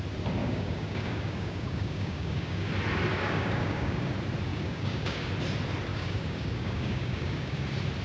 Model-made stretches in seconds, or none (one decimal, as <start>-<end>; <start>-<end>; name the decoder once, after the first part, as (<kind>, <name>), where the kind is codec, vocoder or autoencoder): 0.4-2.7 (codec, DAC); 3.1-4.1; 4.5-5.3; 5.9-7.6